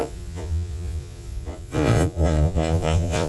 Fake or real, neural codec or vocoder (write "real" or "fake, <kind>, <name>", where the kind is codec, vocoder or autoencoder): fake, vocoder, Vocos